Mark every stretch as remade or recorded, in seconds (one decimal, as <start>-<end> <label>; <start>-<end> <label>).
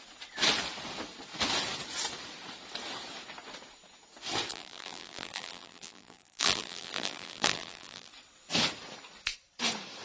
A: 0.0-4.5 recorded; 4.5-8.1 remade; 8.1-10.0 recorded